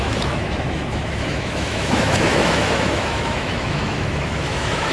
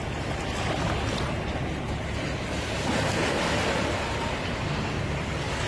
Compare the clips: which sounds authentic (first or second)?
second